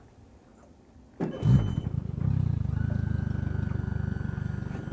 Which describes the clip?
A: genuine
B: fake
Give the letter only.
A